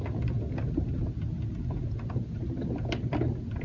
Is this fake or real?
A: real